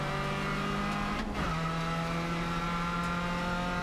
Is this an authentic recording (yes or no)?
yes